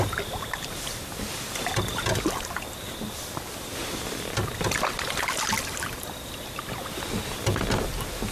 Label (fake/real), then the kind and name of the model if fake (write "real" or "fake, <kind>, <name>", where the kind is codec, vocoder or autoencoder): real